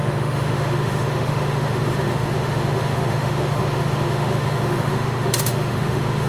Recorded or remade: remade